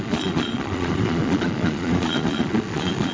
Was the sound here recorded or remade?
remade